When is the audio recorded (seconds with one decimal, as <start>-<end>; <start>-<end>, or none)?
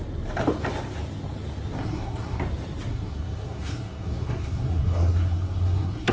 0.0-1.8; 2.4-2.9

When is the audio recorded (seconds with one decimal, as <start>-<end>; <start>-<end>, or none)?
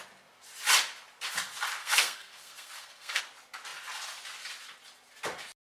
0.0-1.8; 3.2-5.6